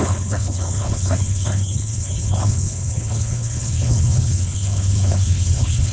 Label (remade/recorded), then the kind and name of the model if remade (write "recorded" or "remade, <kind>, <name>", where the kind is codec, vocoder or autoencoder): remade, codec, HILCodec